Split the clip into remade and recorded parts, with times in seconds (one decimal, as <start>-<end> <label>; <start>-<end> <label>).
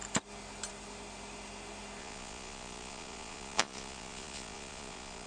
0.0-2.0 recorded; 2.0-5.3 remade